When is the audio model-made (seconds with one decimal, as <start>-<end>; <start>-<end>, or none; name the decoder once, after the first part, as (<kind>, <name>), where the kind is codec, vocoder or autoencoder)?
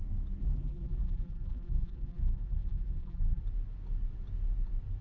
0.4-3.4 (vocoder, BigVGAN v2)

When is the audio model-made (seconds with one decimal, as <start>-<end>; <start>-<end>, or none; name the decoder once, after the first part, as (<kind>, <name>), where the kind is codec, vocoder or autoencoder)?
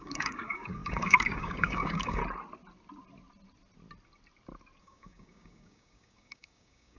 0.0-2.2 (codec, DAC); 4.8-7.0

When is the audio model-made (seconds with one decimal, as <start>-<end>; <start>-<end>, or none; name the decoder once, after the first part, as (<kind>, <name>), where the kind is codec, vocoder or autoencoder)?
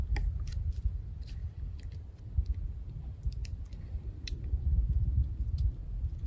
none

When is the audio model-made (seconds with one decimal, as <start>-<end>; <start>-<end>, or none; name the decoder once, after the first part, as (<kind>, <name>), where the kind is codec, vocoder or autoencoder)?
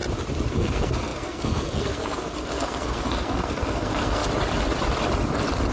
0.5-4.2 (codec, SNAC)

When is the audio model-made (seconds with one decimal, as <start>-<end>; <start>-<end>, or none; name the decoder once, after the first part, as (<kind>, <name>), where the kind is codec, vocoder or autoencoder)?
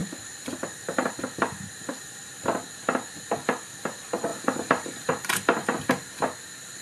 0.0-2.2 (vocoder, BigVGAN v2); 4.3-5.1